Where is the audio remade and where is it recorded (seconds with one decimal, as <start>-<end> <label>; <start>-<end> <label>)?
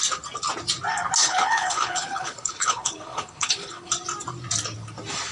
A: 0.0-1.2 recorded; 1.2-3.9 remade; 3.9-5.3 recorded